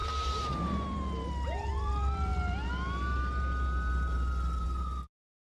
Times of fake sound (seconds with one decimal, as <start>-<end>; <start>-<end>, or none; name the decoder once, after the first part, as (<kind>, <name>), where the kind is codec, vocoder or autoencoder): 0.0-1.7 (vocoder, BigVGAN v2)